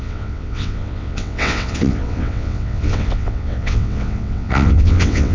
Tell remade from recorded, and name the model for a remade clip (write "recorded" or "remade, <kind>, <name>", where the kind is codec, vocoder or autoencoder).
remade, vocoder, WaveNeXt